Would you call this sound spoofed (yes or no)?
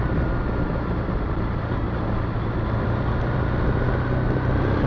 no